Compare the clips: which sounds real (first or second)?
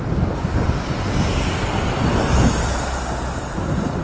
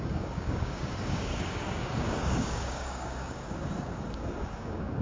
first